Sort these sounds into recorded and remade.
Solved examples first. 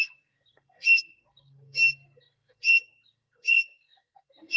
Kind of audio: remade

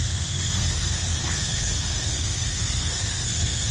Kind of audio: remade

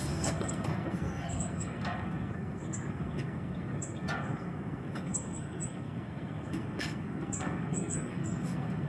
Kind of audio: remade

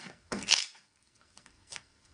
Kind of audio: remade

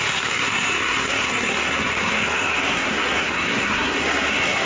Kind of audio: remade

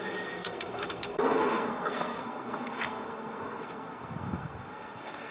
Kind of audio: remade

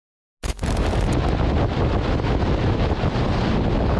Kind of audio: recorded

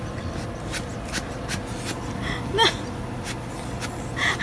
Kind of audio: recorded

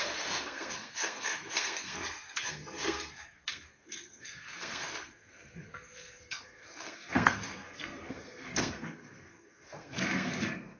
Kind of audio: remade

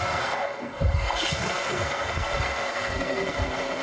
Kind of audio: remade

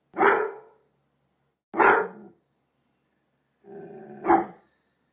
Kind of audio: recorded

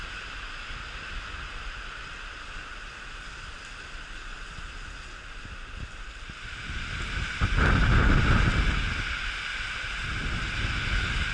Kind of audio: recorded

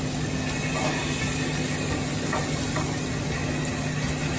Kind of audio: recorded